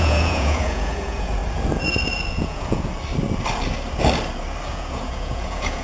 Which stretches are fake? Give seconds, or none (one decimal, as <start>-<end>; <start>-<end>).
0.0-1.4; 2.3-2.9; 4.7-5.8